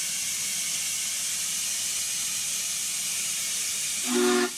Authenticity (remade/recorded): recorded